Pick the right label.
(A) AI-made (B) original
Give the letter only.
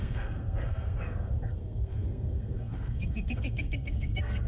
A